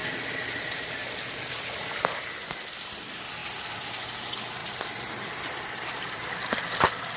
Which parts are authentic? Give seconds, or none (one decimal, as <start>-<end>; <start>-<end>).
0.0-4.6; 6.3-7.2